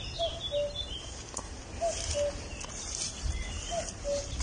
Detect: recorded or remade recorded